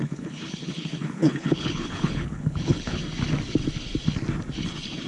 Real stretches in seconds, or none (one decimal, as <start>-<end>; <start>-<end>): 3.0-5.1